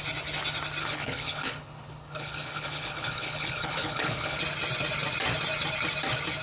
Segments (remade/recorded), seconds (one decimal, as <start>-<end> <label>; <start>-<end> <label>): 0.0-0.8 recorded; 0.8-4.4 remade; 4.4-6.4 recorded